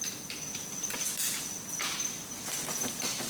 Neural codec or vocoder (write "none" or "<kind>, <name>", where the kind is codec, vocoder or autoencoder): none